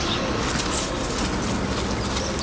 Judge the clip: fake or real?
real